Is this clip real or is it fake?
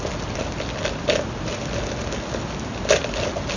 real